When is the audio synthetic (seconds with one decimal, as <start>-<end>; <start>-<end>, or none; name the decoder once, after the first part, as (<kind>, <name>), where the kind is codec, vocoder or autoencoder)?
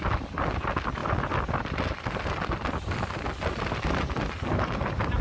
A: none